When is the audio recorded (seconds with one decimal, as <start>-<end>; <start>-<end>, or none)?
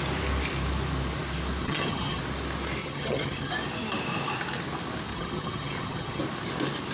0.0-1.6; 2.2-2.8; 3.5-5.1; 6.2-6.9